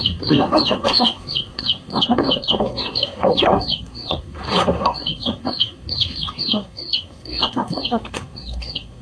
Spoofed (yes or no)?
yes